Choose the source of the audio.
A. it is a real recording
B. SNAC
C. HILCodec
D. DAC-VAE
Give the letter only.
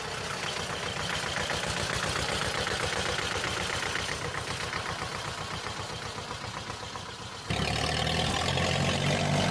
A